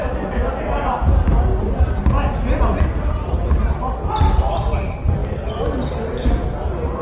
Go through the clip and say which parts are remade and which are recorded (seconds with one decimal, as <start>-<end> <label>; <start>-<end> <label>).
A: 0.0-7.0 recorded